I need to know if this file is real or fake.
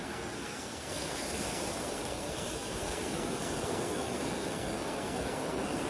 fake